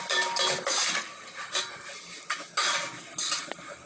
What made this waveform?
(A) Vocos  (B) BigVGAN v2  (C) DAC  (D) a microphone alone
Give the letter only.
D